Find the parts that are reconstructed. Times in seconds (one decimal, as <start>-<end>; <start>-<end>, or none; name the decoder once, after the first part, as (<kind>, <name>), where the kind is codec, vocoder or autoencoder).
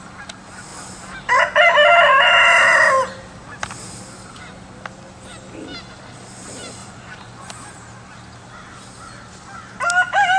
6.8-7.5 (vocoder, Vocos)